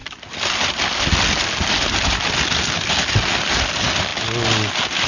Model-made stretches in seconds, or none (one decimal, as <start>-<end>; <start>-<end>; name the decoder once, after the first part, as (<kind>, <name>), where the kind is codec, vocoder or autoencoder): none